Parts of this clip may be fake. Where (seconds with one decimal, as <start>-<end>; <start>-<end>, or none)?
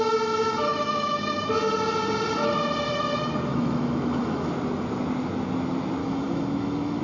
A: 0.7-1.5; 3.5-4.5; 6.0-7.0